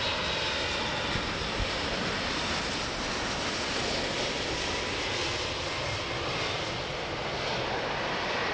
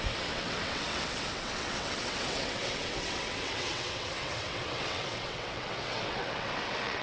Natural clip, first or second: first